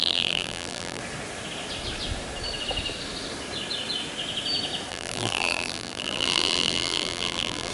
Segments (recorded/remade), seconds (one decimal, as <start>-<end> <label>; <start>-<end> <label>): 0.0-1.0 remade; 1.0-4.9 recorded; 4.9-7.7 remade